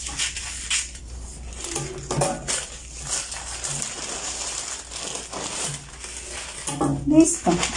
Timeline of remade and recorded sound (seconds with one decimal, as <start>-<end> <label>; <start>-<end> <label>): 0.0-7.8 recorded